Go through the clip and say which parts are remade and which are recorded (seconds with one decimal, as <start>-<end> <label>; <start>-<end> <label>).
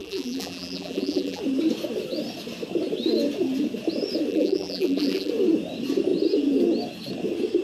0.0-1.4 remade; 1.4-4.3 recorded; 4.3-5.3 remade; 5.3-7.6 recorded